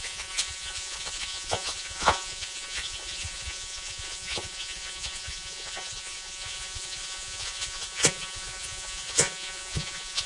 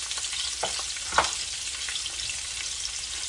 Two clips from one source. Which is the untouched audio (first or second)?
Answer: second